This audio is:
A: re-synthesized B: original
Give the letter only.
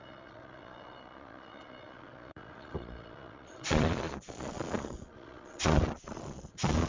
A